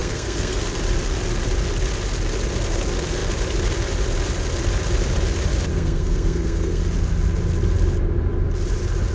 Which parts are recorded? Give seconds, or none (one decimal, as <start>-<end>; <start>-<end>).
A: 0.6-5.7; 6.8-9.1